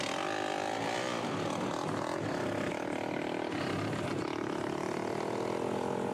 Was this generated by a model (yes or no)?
no